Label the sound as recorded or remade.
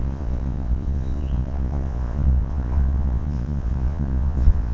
remade